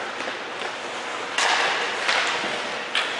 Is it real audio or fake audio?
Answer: real